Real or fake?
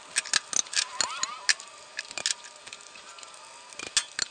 real